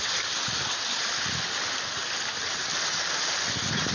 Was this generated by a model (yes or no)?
no